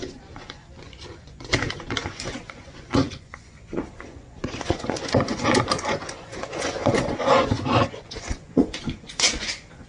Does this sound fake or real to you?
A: fake